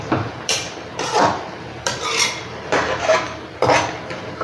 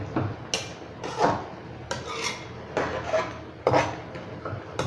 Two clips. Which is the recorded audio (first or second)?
second